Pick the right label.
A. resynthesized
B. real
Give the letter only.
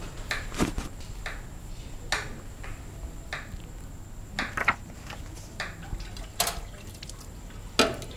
B